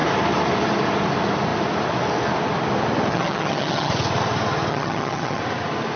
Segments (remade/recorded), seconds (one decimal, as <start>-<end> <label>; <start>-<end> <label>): 0.0-3.1 recorded; 3.1-3.9 remade; 3.9-4.7 recorded; 4.7-5.4 remade; 5.4-6.0 recorded